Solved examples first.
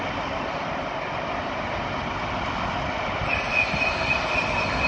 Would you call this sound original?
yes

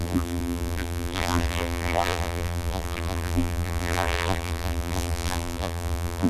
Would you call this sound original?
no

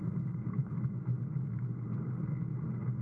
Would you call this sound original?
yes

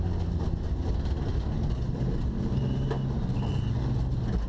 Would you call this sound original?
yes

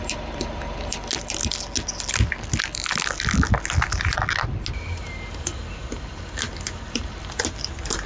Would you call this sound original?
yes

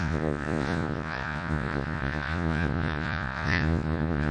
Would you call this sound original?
no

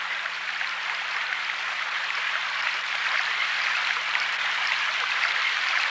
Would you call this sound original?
yes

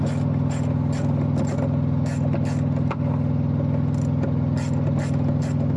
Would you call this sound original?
yes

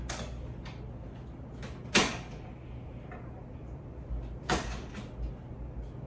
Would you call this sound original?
yes